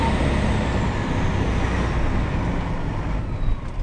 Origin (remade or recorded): recorded